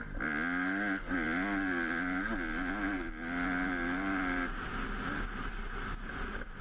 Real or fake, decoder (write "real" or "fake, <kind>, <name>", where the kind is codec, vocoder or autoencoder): real